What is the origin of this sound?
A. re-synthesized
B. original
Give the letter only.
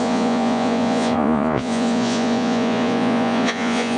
A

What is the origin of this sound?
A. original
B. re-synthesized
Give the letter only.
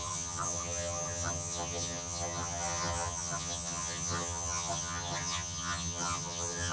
B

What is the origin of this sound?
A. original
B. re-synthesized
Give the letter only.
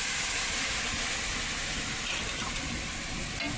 A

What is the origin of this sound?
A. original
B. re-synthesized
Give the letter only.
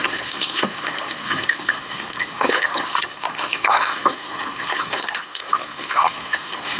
B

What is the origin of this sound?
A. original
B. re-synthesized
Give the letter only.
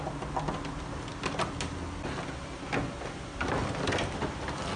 A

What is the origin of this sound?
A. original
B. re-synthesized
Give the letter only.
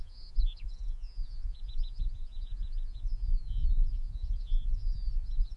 B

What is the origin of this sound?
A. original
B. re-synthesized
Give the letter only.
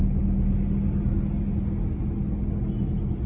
A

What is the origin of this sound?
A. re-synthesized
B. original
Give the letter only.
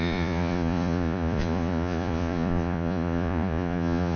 A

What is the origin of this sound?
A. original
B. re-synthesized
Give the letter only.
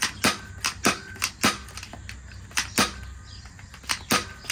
A